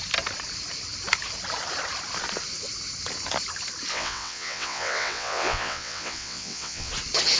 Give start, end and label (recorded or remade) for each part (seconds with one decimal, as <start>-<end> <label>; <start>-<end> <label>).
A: 0.0-3.9 recorded; 3.9-6.9 remade; 6.9-7.4 recorded